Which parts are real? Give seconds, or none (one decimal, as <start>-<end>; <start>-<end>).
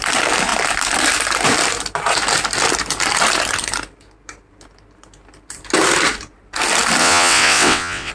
0.0-7.0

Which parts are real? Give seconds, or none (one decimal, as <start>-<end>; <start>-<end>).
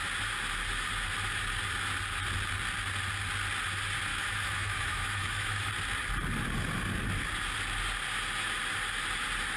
0.0-4.1; 5.7-9.6